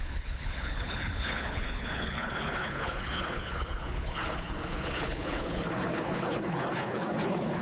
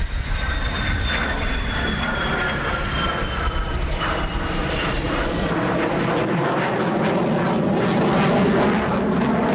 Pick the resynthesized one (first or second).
first